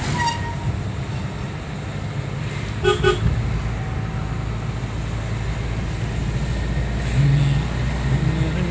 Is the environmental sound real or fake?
real